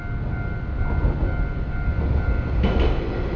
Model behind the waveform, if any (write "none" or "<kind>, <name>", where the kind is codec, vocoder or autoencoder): none